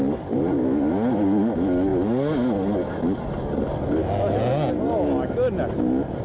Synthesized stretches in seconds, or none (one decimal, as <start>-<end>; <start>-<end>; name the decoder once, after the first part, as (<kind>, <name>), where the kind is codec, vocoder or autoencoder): none